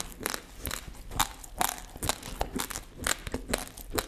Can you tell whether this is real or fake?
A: real